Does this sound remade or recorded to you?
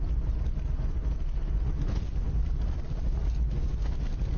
recorded